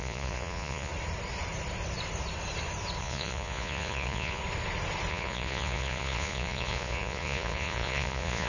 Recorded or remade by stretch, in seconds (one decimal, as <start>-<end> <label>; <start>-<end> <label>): 0.0-0.9 remade; 0.9-3.0 recorded; 3.0-4.4 remade; 4.4-5.1 recorded; 5.1-8.5 remade